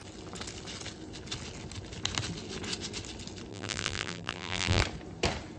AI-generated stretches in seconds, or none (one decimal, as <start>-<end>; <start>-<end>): 3.5-4.8